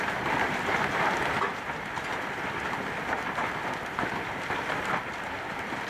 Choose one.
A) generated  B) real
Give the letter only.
B